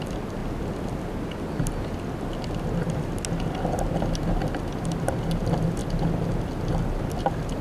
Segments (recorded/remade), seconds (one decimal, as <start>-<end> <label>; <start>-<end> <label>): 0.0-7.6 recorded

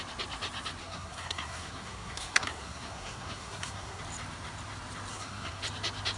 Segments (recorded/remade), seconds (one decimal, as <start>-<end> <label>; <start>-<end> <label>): 0.0-0.8 recorded; 0.8-4.0 remade; 4.0-5.1 recorded; 5.1-5.6 remade; 5.6-6.2 recorded

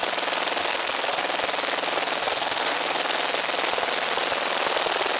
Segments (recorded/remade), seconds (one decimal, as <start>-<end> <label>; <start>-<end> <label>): 0.0-0.6 recorded; 0.6-1.2 remade; 1.2-2.2 recorded; 2.2-2.8 remade; 2.8-5.2 recorded